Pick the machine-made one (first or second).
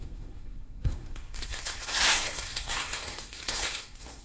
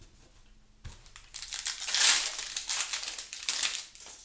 first